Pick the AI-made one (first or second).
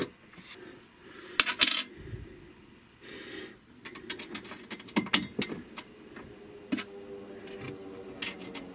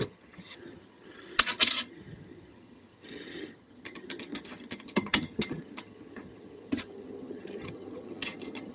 second